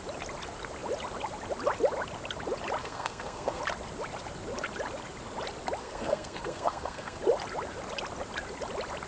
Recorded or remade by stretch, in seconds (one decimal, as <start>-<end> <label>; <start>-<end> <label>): 0.0-2.8 recorded; 2.8-3.6 remade; 3.6-5.8 recorded; 5.8-7.2 remade; 7.2-9.1 recorded

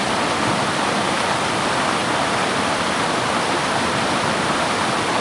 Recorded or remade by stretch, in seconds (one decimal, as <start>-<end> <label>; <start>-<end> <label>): 0.0-2.0 recorded; 2.0-5.2 remade

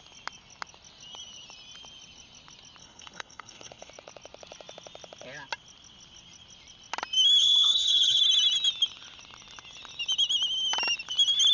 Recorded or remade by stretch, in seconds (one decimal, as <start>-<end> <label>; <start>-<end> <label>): 0.0-2.8 recorded; 2.8-3.9 remade; 3.9-7.4 recorded; 7.4-8.2 remade; 8.2-11.5 recorded

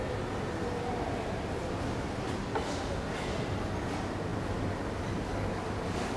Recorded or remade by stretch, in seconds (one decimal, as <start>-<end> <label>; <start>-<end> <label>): 0.0-6.2 recorded

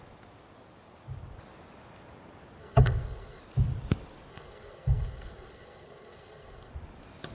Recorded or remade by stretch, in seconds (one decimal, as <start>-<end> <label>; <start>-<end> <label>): 0.0-2.6 recorded; 2.6-3.4 remade; 3.4-4.3 recorded; 4.3-6.7 remade; 6.7-7.3 recorded

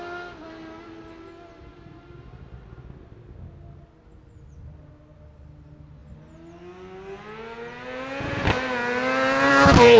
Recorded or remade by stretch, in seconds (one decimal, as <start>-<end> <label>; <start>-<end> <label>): 0.0-10.0 recorded